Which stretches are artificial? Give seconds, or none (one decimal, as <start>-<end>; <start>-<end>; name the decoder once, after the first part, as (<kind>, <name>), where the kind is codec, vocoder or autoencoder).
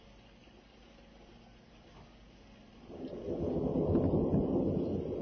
none